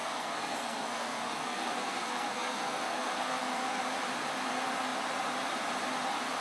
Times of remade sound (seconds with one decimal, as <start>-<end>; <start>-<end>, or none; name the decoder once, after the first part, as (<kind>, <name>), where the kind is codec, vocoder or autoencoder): 0.0-3.8 (codec, SNAC)